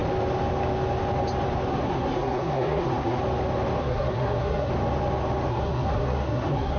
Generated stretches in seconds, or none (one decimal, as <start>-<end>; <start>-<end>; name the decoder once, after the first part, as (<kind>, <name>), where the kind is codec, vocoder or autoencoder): 1.7-3.2 (codec, SNAC); 3.8-4.7; 5.5-6.8